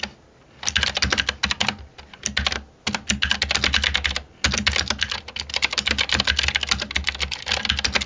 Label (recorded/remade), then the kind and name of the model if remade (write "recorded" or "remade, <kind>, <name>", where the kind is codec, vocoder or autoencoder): recorded